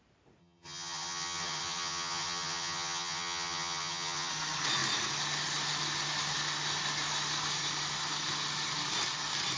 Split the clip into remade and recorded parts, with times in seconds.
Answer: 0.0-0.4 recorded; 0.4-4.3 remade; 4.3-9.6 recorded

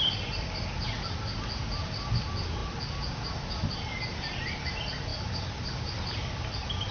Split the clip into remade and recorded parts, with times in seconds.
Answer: 0.0-6.9 recorded

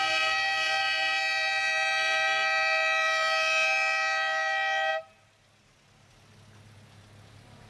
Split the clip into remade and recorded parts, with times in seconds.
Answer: 0.0-7.7 recorded